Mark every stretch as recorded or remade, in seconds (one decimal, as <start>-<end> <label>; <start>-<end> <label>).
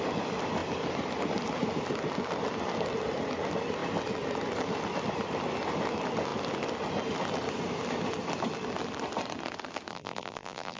0.0-9.9 recorded; 9.9-10.8 remade